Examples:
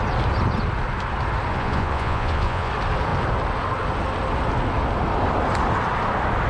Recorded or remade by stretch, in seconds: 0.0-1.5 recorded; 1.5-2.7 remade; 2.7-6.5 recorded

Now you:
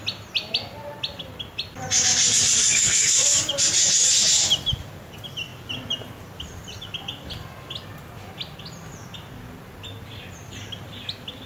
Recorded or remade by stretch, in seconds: 0.0-2.6 recorded; 2.6-3.5 remade; 3.5-11.5 recorded